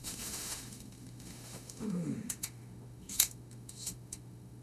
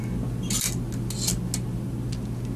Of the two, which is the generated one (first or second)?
first